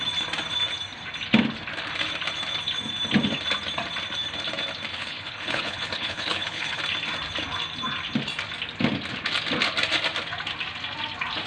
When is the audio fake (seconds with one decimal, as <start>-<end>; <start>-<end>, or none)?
4.9-6.8